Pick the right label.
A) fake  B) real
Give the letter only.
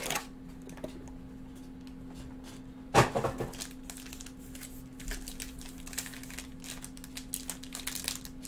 B